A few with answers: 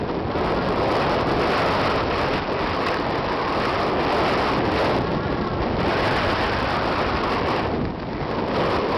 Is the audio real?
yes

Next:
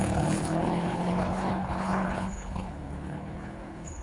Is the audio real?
no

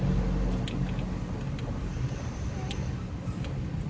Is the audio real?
yes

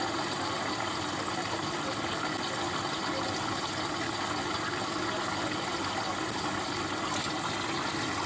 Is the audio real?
yes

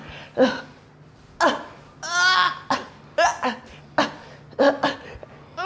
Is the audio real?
yes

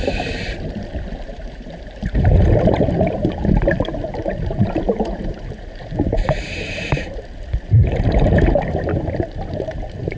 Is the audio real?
no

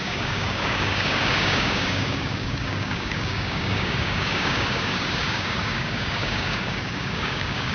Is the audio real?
no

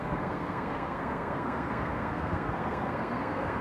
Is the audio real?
no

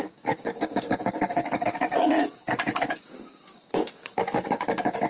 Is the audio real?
no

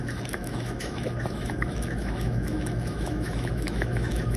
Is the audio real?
no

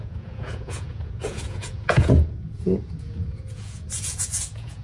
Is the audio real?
no